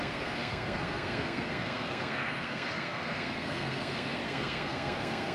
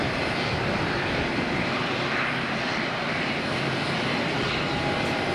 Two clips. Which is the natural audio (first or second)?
second